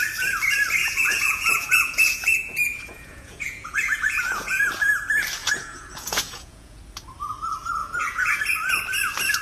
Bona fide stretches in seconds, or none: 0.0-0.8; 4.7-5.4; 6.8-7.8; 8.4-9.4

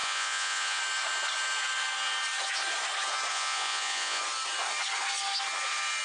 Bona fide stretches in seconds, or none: 0.8-3.3; 4.2-6.0

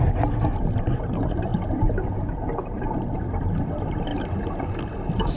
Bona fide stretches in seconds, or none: 1.5-2.6; 4.1-5.4

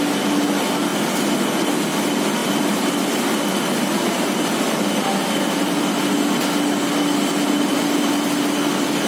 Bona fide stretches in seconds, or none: 0.0-9.1

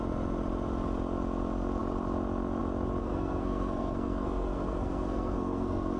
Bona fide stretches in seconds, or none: 0.0-3.0

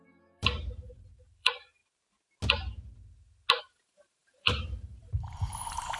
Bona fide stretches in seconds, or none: 1.8-3.6

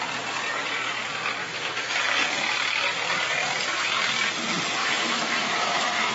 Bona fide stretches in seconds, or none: 0.0-1.4; 2.0-4.8

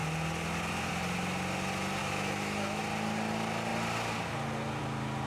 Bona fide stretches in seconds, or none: 0.0-2.0; 2.8-5.3